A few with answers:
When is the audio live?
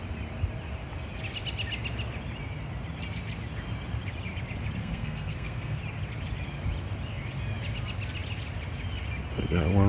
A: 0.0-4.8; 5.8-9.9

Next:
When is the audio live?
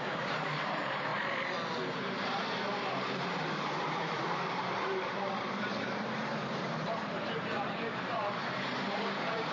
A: 1.1-2.0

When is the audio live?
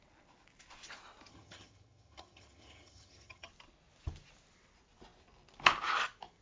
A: 0.0-1.3; 3.5-6.4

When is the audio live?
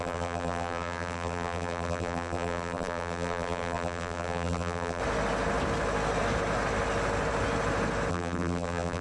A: 5.0-8.1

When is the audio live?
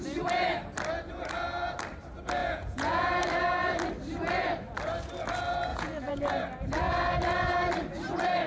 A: 0.0-2.4; 3.1-5.7; 6.3-8.5